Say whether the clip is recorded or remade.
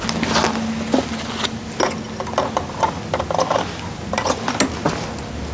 recorded